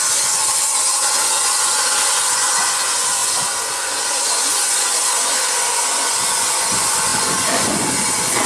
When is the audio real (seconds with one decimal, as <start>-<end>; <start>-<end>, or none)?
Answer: none